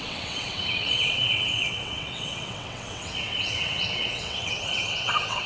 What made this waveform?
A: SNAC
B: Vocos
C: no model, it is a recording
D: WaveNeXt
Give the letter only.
D